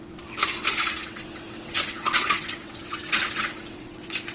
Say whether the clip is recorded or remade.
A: remade